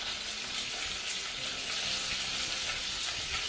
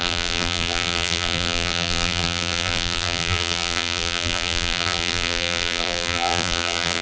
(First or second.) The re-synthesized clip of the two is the second